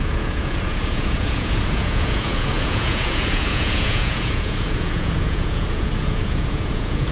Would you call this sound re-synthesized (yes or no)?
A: yes